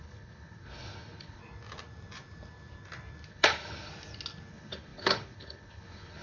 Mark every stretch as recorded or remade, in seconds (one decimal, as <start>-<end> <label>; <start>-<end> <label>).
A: 0.0-1.4 remade; 1.4-3.3 recorded; 3.3-3.9 remade; 3.9-4.5 recorded; 4.5-6.2 remade